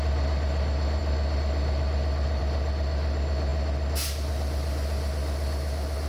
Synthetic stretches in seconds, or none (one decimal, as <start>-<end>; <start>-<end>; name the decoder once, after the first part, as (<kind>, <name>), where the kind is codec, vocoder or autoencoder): none